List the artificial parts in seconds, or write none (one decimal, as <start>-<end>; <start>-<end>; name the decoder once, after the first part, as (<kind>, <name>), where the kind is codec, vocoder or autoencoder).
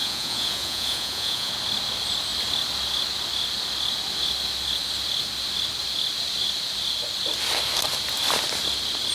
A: 0.0-1.5 (vocoder, Vocos)